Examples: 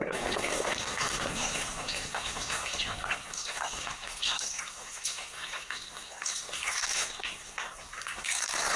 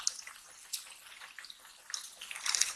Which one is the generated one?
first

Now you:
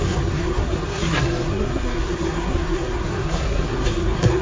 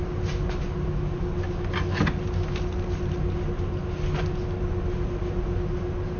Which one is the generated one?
first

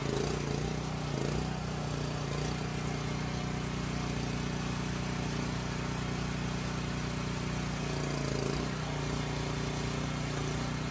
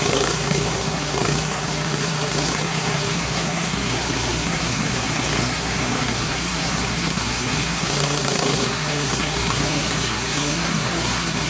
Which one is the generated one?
second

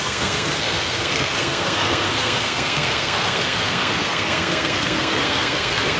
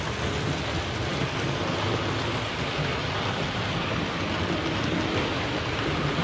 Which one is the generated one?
first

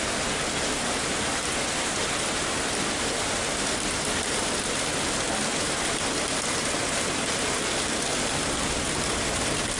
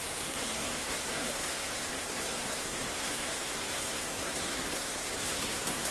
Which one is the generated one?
second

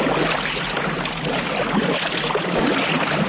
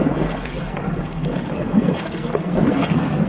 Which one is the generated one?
second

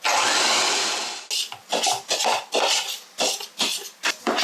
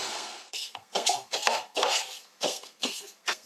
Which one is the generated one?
second